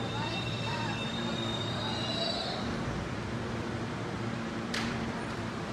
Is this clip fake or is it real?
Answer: fake